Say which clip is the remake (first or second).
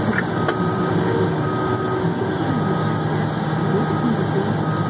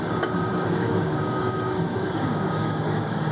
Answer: second